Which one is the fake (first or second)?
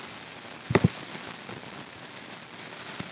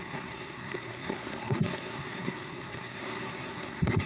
second